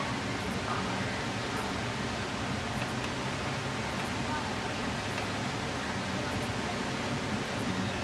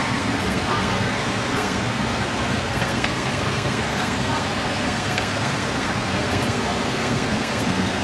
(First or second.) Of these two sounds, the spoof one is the second